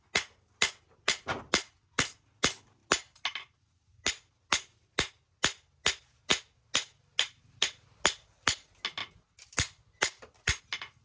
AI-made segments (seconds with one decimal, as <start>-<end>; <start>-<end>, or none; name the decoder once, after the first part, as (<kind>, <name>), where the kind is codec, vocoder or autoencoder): none